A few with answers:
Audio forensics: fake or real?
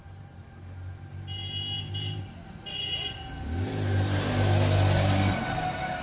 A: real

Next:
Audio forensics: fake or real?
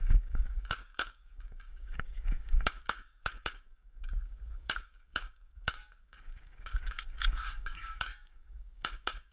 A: fake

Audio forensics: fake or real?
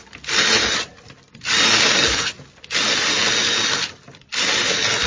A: real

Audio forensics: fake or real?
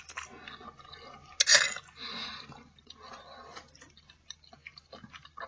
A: real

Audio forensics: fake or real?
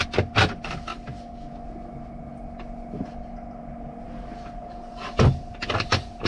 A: real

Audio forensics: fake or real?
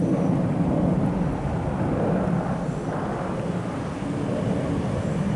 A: real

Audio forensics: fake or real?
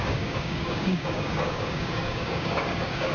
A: fake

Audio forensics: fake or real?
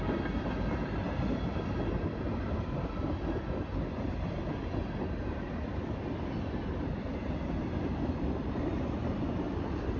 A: real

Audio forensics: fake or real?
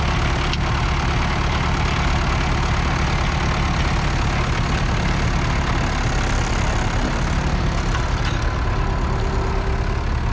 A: real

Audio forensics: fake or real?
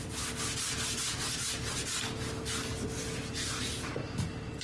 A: real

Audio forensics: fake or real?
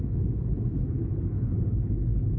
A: fake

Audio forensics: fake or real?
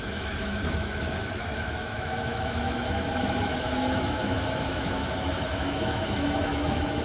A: fake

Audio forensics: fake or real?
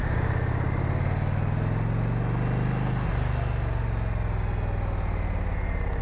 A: real